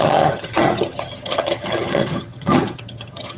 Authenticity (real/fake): fake